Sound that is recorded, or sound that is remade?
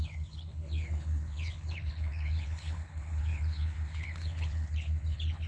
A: remade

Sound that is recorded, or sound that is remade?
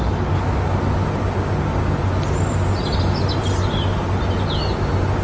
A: recorded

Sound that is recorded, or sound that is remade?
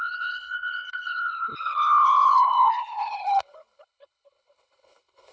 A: remade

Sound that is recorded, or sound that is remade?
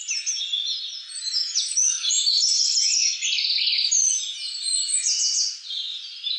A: recorded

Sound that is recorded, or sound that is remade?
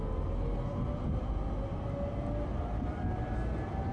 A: recorded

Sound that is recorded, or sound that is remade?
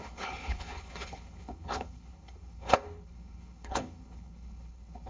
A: remade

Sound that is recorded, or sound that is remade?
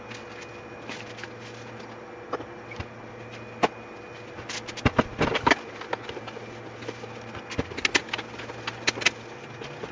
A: recorded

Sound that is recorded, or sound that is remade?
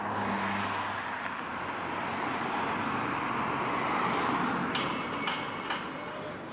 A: recorded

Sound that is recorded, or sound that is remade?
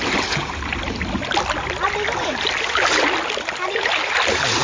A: recorded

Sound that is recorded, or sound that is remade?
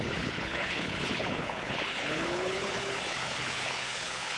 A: remade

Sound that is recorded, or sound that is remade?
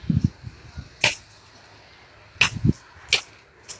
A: recorded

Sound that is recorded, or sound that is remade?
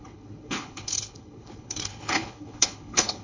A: remade